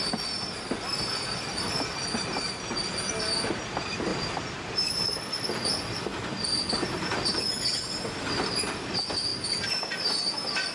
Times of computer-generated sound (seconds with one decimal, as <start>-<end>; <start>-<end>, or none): 4.1-4.9